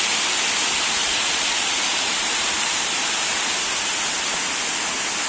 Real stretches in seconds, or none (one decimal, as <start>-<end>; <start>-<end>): 0.0-1.0; 3.1-5.3